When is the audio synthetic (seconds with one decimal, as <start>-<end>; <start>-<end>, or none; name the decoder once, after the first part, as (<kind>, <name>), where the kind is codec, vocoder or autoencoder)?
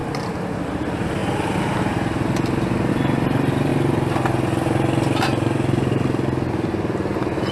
none